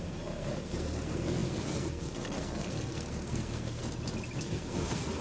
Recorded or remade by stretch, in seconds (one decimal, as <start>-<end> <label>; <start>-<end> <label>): 0.0-3.8 remade; 3.8-4.4 recorded; 4.4-5.2 remade